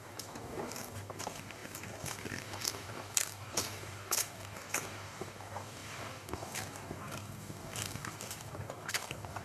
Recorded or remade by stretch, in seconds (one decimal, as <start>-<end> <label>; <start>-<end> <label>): 0.0-9.4 remade